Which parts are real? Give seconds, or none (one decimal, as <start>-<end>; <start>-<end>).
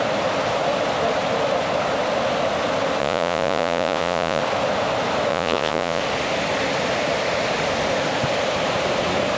0.0-3.0; 4.4-5.3; 6.0-9.4